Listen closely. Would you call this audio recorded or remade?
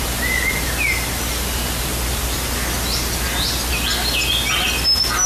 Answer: recorded